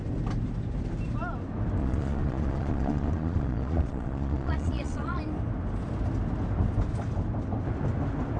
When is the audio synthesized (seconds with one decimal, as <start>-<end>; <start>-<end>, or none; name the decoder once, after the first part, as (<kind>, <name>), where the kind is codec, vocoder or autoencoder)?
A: 1.8-5.2 (vocoder, Vocos)